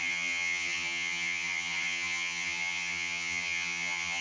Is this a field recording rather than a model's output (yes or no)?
no